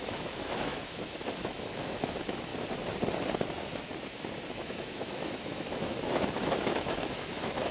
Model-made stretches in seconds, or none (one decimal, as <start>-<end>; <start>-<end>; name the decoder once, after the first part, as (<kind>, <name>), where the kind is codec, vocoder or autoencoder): 0.0-2.5 (autoencoder, DAC-VAE); 4.5-7.7